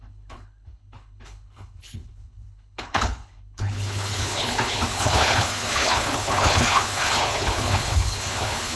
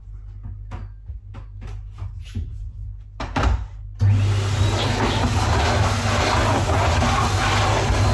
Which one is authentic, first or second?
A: second